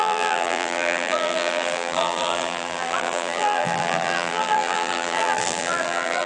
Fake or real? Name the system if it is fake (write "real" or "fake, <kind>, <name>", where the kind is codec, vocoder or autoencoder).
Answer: fake, vocoder, BigVGAN v2